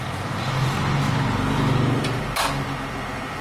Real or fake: real